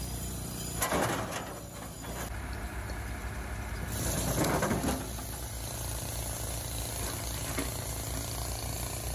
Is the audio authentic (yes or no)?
yes